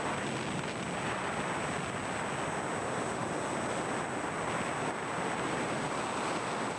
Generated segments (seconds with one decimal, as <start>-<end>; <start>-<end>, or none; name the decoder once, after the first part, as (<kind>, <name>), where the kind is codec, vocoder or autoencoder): none